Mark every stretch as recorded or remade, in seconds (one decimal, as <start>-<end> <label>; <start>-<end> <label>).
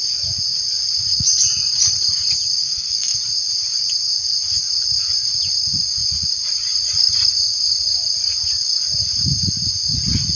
0.0-2.6 recorded; 2.6-3.2 remade; 3.2-10.3 recorded